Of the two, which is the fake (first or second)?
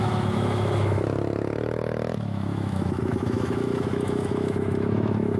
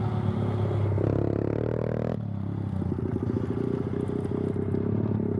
first